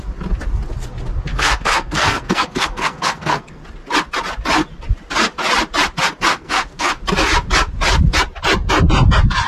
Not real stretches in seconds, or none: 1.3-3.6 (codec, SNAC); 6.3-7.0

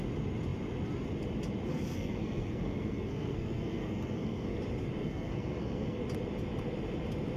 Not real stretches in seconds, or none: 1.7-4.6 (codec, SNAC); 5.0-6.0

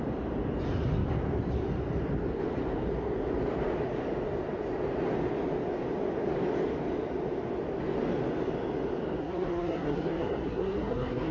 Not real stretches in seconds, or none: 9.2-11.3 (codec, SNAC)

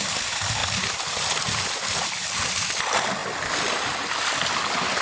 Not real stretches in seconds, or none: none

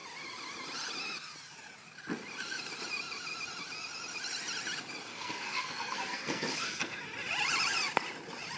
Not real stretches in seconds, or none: 5.1-7.0 (codec, SNAC)